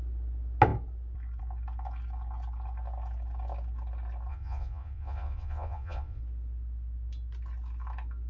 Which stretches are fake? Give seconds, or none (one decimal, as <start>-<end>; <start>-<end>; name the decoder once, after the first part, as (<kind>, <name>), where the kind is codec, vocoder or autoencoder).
4.3-6.2 (vocoder, Vocos)